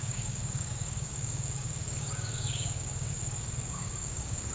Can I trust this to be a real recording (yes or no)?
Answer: no